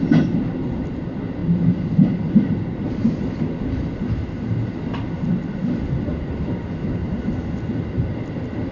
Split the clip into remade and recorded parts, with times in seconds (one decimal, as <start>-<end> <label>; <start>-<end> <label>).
0.0-7.0 recorded; 7.0-8.7 remade